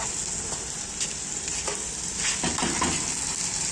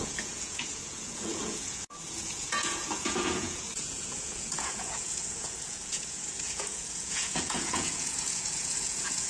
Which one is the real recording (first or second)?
first